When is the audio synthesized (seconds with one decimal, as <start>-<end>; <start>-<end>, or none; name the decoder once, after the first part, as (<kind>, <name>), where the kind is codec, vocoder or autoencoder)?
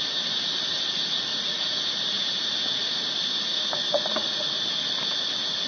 1.3-1.8 (vocoder, Vocos); 3.5-4.6